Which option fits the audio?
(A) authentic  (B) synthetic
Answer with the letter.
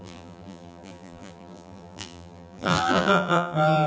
B